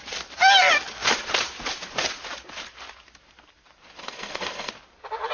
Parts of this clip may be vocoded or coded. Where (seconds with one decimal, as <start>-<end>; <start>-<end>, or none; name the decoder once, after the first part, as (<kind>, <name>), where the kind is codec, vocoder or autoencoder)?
4.0-4.7 (codec, SNAC)